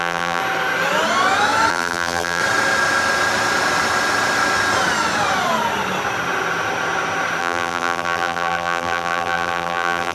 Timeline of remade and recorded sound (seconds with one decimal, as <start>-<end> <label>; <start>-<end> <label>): 0.0-0.4 remade; 0.4-1.7 recorded; 1.7-2.4 remade; 2.4-7.4 recorded; 7.4-10.1 remade